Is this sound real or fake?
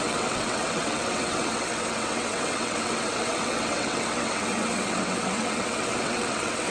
fake